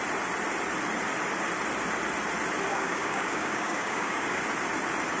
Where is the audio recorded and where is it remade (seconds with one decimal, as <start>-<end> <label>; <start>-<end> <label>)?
0.0-2.7 recorded; 2.7-4.4 remade; 4.4-5.2 recorded